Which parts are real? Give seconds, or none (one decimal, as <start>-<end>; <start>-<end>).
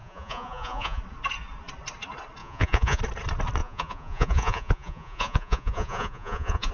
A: 1.0-2.4; 3.0-3.6